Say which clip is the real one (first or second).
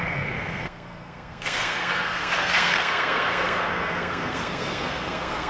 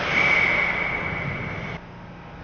second